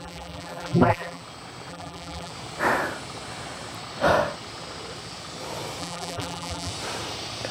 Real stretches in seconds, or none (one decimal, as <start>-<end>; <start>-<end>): 1.2-1.7; 2.3-5.8; 6.7-7.5